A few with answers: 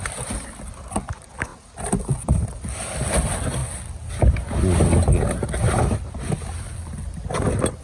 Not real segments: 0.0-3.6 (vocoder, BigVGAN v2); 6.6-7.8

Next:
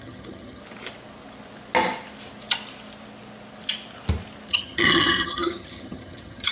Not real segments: 0.0-0.6 (vocoder, HiFi-GAN); 4.5-6.5